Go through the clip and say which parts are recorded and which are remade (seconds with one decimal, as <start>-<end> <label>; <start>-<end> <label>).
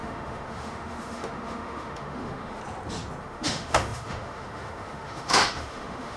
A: 0.0-2.6 remade; 2.6-3.2 recorded; 3.2-6.2 remade